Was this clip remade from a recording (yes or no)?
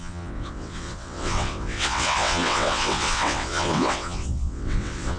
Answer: yes